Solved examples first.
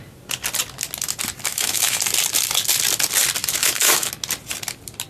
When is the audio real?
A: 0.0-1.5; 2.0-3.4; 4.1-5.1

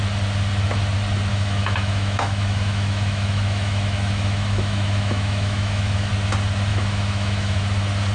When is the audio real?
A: 0.0-1.3; 6.1-6.7; 7.6-8.1